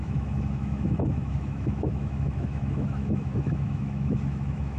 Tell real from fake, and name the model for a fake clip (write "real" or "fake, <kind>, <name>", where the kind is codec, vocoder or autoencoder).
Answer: fake, autoencoder, DAC-VAE